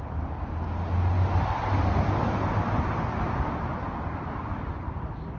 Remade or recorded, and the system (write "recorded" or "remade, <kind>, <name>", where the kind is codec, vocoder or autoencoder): recorded